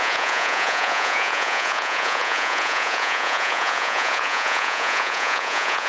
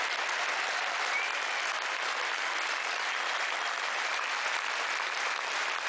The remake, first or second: first